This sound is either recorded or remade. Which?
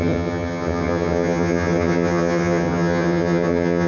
remade